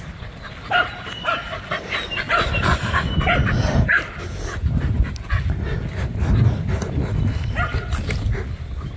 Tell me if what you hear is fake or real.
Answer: real